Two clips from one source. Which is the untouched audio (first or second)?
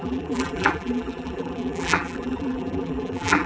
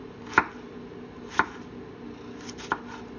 second